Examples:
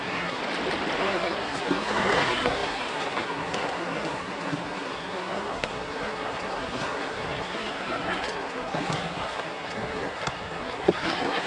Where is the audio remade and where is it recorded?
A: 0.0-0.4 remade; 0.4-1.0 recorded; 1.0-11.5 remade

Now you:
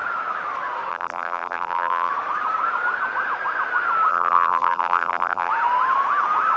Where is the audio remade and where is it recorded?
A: 0.0-0.9 recorded; 0.9-2.1 remade; 2.1-4.1 recorded; 4.1-5.5 remade; 5.5-6.6 recorded

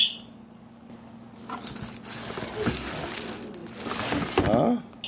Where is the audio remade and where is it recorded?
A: 0.0-5.1 recorded

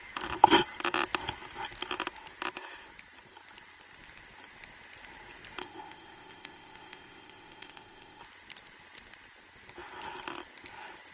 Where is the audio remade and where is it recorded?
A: 0.0-5.6 recorded; 5.6-8.2 remade; 8.2-11.1 recorded

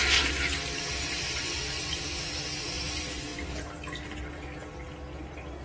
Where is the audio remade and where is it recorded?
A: 0.0-5.6 recorded

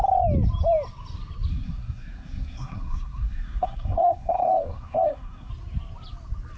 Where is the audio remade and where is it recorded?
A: 0.0-1.5 recorded; 1.5-5.5 remade; 5.5-6.6 recorded

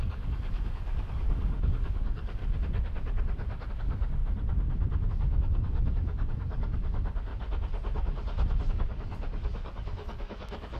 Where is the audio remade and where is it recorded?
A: 0.0-2.4 remade; 2.4-3.7 recorded; 3.7-4.2 remade; 4.2-5.1 recorded; 5.1-7.3 remade; 7.3-8.7 recorded; 8.7-10.8 remade